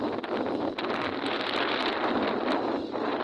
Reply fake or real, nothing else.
real